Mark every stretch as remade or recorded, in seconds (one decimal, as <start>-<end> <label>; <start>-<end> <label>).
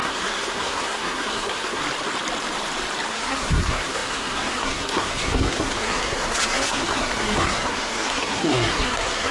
0.0-1.8 remade; 1.8-3.1 recorded; 3.1-9.3 remade